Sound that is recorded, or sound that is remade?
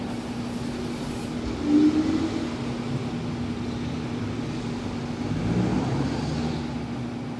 recorded